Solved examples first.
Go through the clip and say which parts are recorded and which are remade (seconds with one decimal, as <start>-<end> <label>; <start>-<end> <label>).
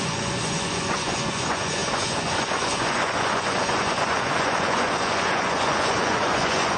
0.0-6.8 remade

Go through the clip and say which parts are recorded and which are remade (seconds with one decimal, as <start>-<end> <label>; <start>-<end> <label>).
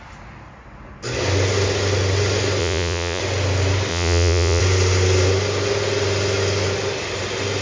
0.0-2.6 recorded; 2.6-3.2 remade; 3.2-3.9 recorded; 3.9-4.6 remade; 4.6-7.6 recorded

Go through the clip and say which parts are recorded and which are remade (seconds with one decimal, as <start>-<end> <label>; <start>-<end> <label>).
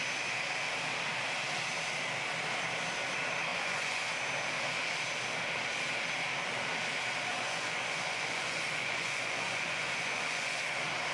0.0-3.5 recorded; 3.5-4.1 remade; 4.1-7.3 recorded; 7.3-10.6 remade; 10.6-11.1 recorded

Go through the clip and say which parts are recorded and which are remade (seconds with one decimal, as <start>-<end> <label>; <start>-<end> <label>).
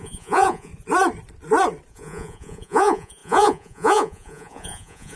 0.0-0.7 remade; 0.7-1.9 recorded; 1.9-5.2 remade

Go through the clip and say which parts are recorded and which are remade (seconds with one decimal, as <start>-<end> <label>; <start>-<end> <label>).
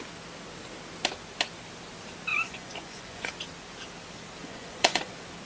0.0-2.3 recorded; 2.3-3.3 remade; 3.3-4.4 recorded; 4.4-5.1 remade; 5.1-5.5 recorded